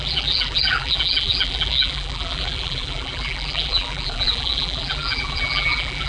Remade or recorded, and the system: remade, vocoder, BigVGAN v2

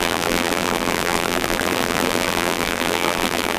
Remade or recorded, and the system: remade, vocoder, BigVGAN v2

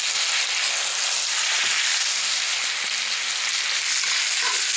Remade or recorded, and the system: recorded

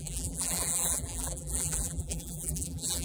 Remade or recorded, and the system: remade, vocoder, BigVGAN v2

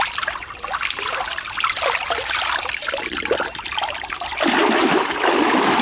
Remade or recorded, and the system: remade, vocoder, BigVGAN v2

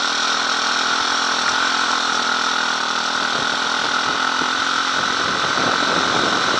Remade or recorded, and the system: remade, vocoder, BigVGAN v2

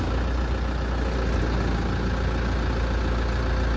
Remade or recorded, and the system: recorded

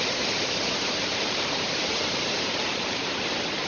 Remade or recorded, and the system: remade, vocoder, BigVGAN v2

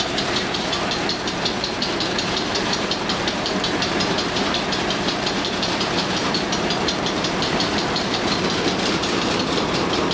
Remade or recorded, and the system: remade, vocoder, BigVGAN v2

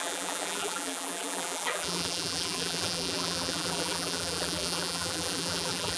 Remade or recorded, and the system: remade, vocoder, BigVGAN v2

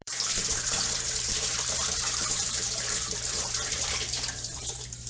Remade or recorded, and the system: remade, vocoder, BigVGAN v2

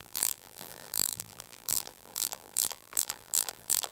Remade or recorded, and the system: remade, vocoder, BigVGAN v2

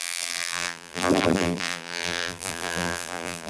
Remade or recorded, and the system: remade, vocoder, BigVGAN v2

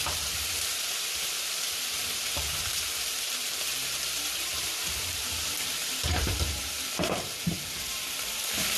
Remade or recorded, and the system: remade, vocoder, BigVGAN v2